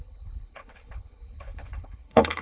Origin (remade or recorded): remade